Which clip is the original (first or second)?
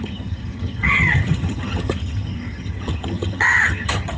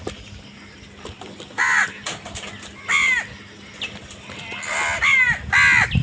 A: second